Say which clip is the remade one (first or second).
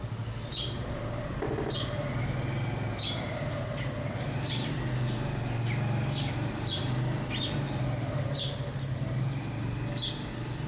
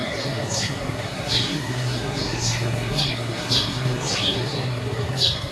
second